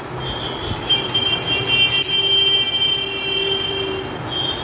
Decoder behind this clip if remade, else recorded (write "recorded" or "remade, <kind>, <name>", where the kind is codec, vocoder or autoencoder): recorded